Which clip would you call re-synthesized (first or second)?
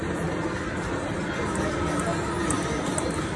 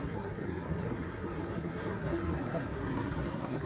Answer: second